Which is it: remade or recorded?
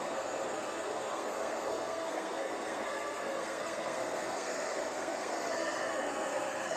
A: remade